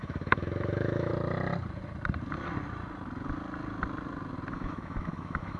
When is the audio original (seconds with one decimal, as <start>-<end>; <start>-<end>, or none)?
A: 1.1-4.5